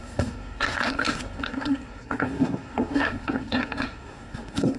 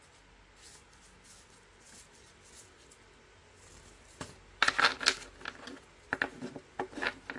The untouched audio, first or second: second